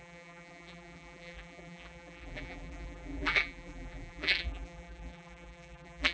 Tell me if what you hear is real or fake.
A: fake